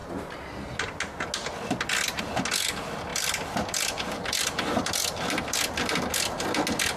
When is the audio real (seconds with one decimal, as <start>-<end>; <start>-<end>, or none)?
0.0-3.1; 6.0-7.0

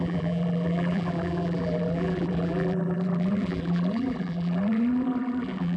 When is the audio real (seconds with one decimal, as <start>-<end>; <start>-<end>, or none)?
none

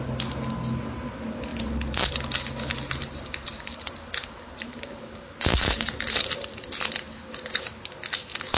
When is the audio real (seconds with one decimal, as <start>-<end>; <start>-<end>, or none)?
0.0-1.5; 6.3-8.6

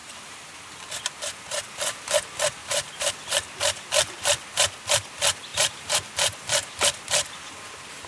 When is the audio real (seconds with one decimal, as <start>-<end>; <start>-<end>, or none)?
0.5-2.6; 3.1-5.5; 6.1-8.1

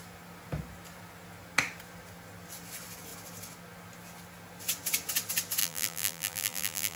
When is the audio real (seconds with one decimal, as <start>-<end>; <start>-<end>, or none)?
0.0-5.6

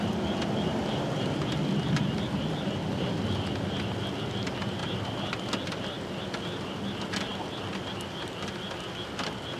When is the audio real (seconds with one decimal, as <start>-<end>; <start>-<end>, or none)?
0.0-9.6